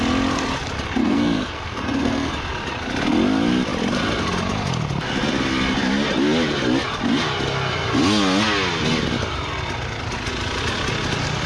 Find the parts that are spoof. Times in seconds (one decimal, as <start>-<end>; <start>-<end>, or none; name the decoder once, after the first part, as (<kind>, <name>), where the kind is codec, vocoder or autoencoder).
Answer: 1.0-2.3 (codec, SNAC)